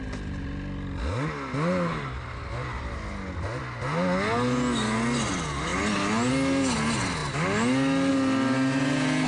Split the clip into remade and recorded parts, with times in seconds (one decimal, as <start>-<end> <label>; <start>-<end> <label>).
0.0-9.3 recorded